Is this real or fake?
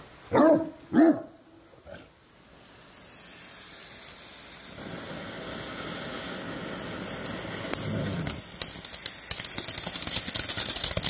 real